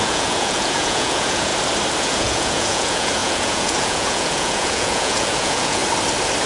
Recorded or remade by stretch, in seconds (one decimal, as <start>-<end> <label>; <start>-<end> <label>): 0.0-1.5 remade; 1.5-2.0 recorded; 2.0-5.8 remade; 5.8-6.5 recorded